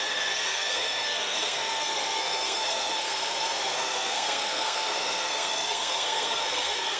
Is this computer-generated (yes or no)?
yes